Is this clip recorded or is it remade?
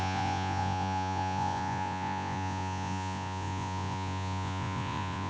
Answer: remade